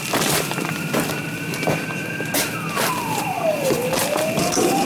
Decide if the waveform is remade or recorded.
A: remade